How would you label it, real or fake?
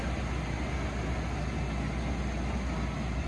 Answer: real